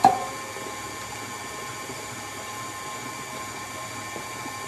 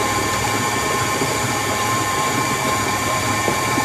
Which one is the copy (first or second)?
second